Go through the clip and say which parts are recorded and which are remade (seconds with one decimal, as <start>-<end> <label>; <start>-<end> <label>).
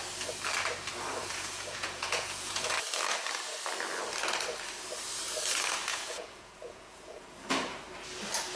0.0-1.2 recorded; 1.2-2.7 remade; 2.7-5.9 recorded; 5.9-7.3 remade; 7.3-8.6 recorded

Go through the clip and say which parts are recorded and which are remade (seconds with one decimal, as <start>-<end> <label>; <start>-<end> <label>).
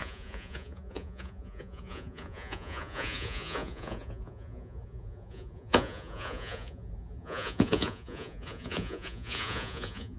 0.0-10.2 remade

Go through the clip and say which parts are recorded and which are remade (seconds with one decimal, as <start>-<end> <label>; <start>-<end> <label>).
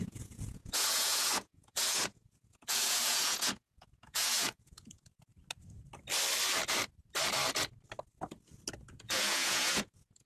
0.0-5.3 remade; 5.3-8.9 recorded; 8.9-10.3 remade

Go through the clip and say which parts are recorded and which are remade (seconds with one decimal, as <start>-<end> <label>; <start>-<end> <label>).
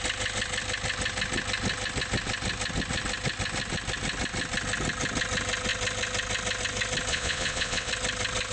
0.0-7.1 recorded; 7.1-7.9 remade; 7.9-8.5 recorded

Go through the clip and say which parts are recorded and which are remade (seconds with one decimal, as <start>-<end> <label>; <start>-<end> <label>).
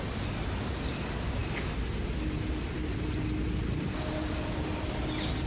0.0-5.5 recorded